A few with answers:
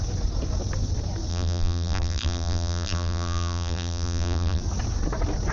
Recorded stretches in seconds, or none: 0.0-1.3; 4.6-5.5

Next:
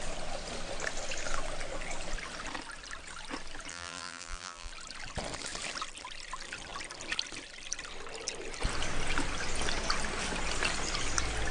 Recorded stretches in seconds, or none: 0.0-3.7; 4.7-11.5

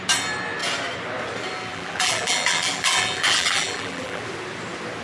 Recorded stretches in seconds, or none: 0.0-1.7; 4.2-5.0